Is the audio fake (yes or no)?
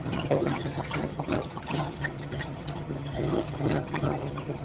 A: yes